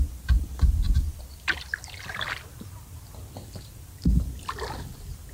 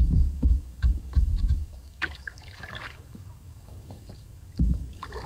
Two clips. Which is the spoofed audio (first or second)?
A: second